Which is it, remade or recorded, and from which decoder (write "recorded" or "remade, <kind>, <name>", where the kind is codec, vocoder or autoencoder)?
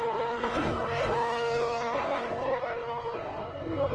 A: remade, codec, SNAC